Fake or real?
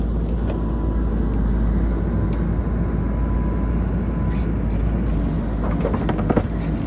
real